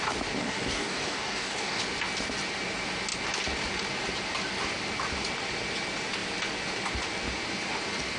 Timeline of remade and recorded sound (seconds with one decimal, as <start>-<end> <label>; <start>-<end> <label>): 0.0-0.4 recorded; 0.4-1.8 remade; 1.8-8.2 recorded